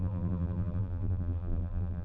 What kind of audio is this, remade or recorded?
remade